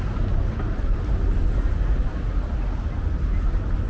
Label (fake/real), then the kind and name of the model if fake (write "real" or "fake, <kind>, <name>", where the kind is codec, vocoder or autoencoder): real